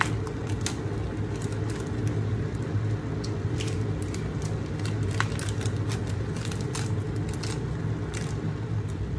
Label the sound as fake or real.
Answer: real